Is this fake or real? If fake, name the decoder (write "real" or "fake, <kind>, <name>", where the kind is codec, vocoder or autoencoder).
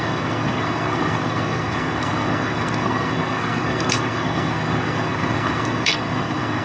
fake, codec, SNAC